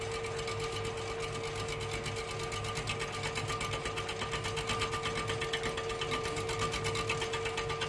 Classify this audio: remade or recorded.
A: recorded